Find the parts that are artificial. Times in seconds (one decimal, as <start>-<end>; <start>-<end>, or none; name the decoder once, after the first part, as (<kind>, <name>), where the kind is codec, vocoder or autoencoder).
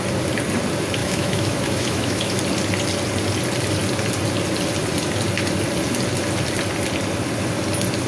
1.0-2.4 (autoencoder, DAC-VAE)